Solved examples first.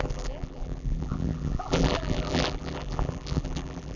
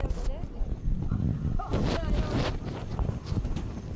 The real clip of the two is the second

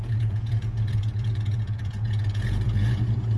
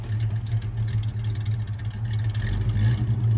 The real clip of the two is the second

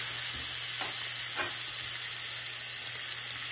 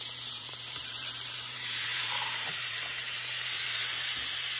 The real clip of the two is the first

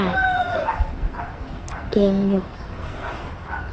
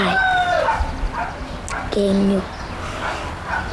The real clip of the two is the second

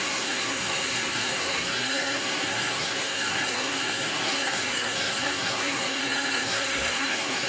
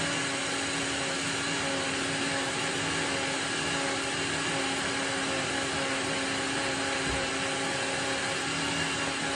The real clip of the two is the second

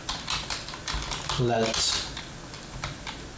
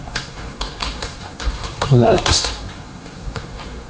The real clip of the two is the first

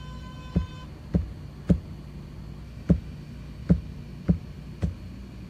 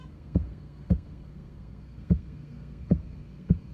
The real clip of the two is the first